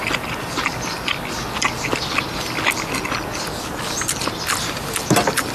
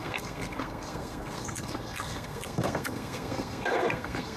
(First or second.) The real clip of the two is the first